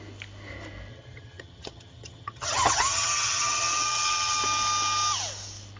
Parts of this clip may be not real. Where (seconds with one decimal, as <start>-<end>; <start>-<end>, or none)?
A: 0.9-4.4